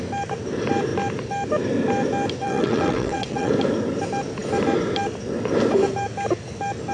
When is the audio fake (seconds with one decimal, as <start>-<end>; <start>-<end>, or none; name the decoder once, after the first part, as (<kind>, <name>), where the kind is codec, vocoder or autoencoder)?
2.4-3.5 (vocoder, WaveNeXt)

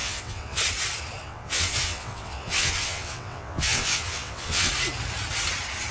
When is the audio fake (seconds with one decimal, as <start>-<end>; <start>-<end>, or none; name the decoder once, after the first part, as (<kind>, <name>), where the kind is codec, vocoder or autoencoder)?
0.0-0.6 (vocoder, WaveNeXt); 1.2-4.7